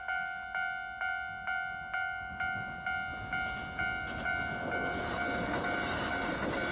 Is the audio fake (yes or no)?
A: no